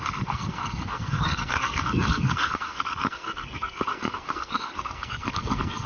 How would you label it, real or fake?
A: fake